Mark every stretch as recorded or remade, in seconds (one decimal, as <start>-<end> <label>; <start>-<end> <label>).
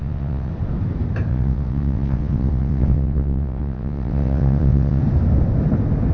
0.0-0.5 remade; 0.5-1.3 recorded; 1.3-5.0 remade; 5.0-6.1 recorded